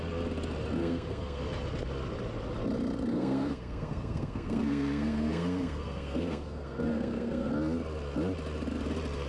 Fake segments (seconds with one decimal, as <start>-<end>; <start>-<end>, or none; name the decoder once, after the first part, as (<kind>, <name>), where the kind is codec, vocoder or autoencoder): 0.8-1.4 (codec, SNAC); 3.1-7.5